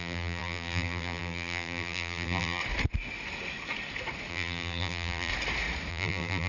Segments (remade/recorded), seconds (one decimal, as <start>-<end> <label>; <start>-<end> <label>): 0.0-2.6 remade; 2.6-4.3 recorded; 4.3-5.3 remade; 5.3-5.9 recorded; 5.9-6.5 remade